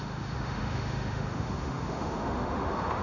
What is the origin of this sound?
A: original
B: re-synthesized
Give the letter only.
B